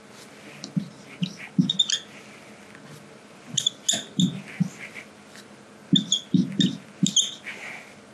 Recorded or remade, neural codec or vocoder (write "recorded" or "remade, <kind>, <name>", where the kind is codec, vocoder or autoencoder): recorded